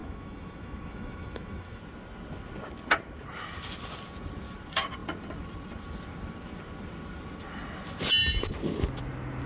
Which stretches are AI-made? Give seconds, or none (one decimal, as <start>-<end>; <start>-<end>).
0.0-1.8